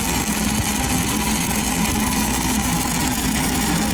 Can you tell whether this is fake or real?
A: real